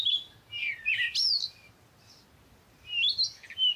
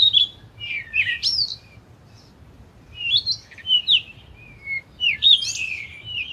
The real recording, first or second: first